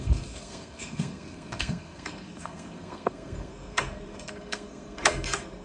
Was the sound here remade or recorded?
remade